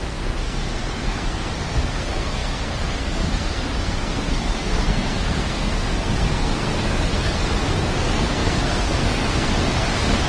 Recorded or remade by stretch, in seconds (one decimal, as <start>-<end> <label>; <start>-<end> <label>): 0.0-10.3 remade